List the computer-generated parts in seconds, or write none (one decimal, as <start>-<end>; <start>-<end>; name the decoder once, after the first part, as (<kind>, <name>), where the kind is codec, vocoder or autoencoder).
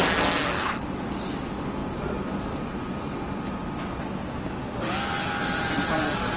none